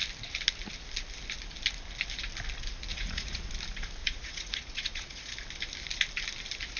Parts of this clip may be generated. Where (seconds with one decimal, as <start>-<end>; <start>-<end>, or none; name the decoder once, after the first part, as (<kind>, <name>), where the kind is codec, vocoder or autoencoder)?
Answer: 2.9-3.5 (vocoder, Vocos); 4.0-5.3